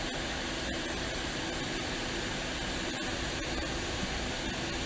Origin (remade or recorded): recorded